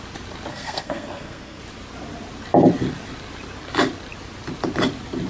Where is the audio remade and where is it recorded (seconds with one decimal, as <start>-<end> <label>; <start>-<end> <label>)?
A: 0.0-0.5 recorded; 0.5-1.6 remade; 1.6-5.3 recorded